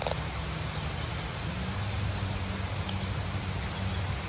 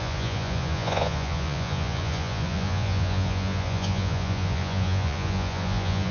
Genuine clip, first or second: first